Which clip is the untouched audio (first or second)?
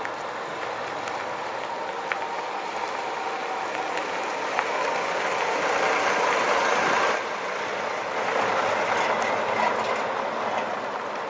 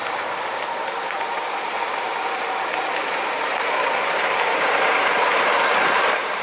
first